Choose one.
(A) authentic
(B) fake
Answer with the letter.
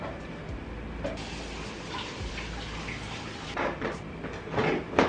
A